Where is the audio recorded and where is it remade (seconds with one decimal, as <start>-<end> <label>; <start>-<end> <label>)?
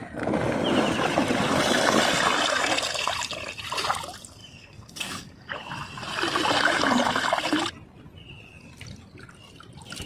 0.0-4.4 recorded; 4.4-5.7 remade; 5.7-10.1 recorded